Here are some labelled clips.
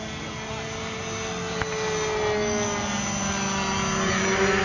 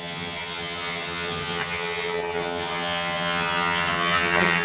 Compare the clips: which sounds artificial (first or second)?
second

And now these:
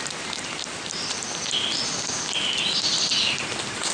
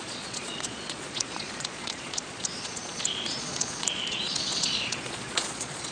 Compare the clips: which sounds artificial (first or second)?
second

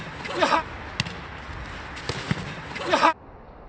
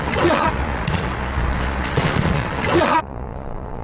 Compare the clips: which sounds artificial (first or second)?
second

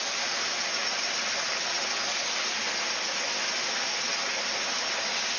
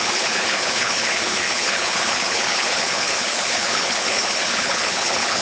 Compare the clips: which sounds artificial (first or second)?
second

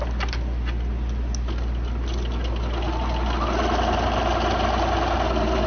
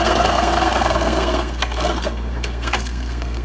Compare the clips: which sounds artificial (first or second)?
second